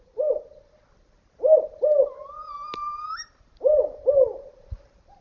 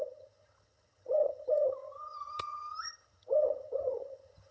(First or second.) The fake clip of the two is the second